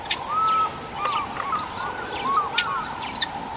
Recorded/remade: recorded